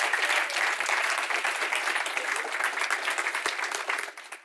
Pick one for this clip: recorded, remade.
recorded